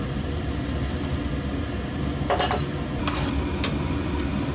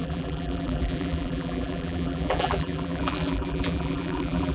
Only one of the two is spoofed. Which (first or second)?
second